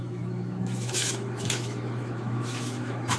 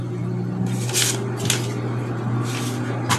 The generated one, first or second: first